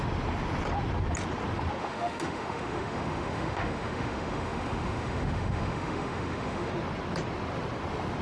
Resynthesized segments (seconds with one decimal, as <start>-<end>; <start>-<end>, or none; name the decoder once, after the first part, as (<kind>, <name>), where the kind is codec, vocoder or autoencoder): 1.8-6.7 (autoencoder, DAC-VAE)